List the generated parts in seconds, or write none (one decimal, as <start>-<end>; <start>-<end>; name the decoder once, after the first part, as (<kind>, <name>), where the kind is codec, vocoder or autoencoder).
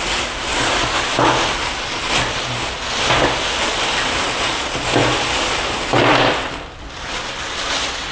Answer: none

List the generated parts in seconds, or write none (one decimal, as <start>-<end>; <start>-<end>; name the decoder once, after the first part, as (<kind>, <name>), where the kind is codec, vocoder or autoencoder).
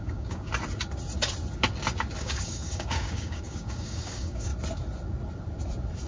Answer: 0.0-0.5 (codec, DAC); 2.2-4.5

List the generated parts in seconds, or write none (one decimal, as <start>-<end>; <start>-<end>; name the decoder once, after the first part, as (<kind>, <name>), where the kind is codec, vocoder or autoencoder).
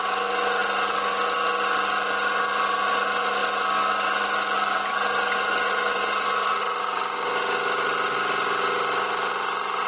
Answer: none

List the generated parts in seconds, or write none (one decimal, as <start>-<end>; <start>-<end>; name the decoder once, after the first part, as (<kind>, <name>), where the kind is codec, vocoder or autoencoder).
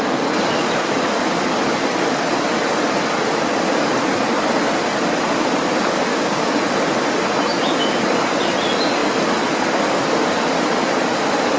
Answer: 6.1-6.6 (codec, DAC)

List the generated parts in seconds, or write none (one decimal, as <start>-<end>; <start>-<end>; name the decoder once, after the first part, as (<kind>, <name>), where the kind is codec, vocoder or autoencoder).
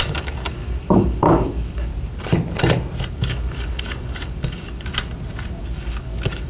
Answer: 0.0-1.9 (codec, DAC); 3.1-4.9; 5.6-6.5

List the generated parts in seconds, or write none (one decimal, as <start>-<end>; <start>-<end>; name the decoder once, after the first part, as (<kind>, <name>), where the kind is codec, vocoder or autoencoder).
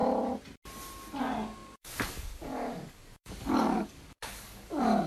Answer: 1.2-5.1 (codec, DAC)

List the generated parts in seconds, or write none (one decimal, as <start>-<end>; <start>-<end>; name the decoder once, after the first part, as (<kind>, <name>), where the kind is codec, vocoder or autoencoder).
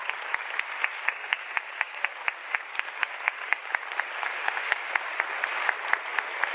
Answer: 1.1-2.0 (codec, DAC); 2.4-3.6; 4.4-4.9